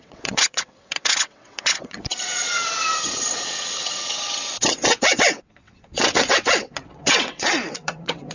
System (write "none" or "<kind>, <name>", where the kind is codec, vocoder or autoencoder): vocoder, WaveNeXt